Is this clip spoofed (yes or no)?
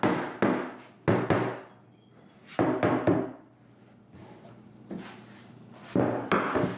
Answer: no